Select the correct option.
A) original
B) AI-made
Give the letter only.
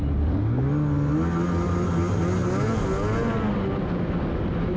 A